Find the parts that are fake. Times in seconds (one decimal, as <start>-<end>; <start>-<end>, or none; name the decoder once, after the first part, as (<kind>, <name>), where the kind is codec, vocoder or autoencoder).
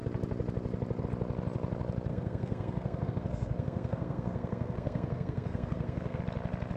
2.1-6.2 (codec, SNAC)